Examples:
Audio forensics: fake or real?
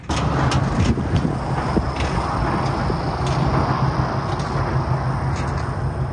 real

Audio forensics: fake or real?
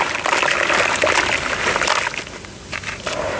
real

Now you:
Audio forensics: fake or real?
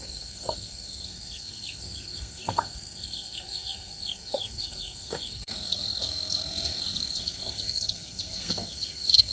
fake